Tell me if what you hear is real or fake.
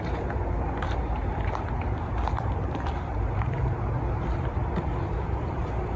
fake